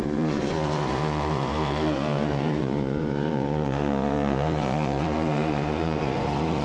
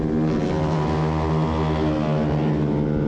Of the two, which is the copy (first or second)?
first